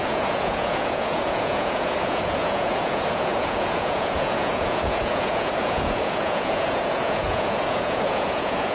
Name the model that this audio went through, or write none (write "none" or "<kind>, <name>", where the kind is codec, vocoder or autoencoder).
vocoder, Vocos